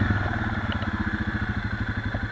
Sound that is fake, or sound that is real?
real